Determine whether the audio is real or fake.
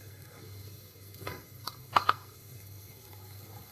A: fake